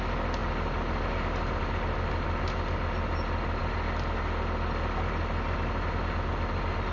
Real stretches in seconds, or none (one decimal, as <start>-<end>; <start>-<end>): 0.0-6.9